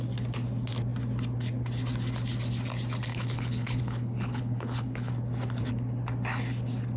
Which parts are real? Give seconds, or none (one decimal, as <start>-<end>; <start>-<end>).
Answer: 0.0-3.1; 5.1-7.0